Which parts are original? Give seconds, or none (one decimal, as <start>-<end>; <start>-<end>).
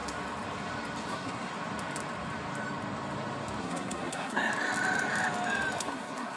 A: 0.0-1.1; 1.5-3.6; 4.5-5.8